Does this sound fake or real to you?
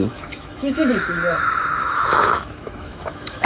fake